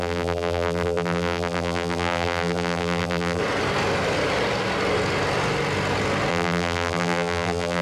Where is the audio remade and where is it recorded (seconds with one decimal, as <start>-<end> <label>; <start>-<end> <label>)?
0.0-3.4 remade; 3.4-6.3 recorded; 6.3-7.8 remade